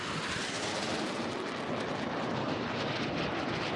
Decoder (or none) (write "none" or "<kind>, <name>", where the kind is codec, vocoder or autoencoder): none